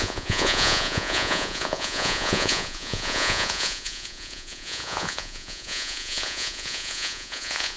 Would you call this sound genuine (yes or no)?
no